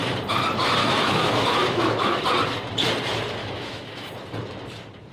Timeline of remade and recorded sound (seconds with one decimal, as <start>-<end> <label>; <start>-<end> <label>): 0.0-0.8 recorded; 0.8-2.2 remade; 2.2-3.4 recorded; 3.4-4.1 remade; 4.1-5.1 recorded